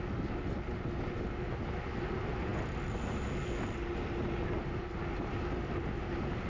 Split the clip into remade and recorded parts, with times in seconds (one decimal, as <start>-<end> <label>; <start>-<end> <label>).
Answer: 0.0-6.5 recorded